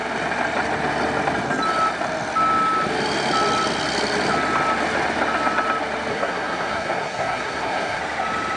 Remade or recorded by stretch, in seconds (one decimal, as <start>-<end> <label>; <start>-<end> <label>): 0.0-6.1 recorded; 6.1-8.0 remade; 8.0-8.6 recorded